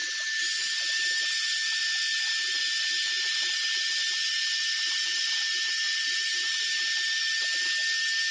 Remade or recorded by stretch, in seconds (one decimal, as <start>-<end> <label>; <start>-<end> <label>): 0.0-8.3 recorded